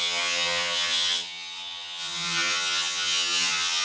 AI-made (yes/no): yes